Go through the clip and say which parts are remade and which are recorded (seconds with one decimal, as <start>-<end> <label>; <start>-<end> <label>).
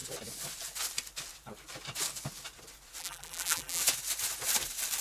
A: 0.0-3.0 recorded; 3.0-3.8 remade; 3.8-5.0 recorded